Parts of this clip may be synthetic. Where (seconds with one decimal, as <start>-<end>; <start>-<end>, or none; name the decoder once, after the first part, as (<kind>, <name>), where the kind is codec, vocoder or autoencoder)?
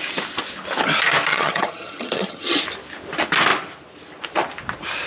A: 1.3-2.6 (vocoder, HiFi-GAN)